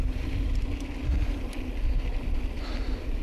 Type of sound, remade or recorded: recorded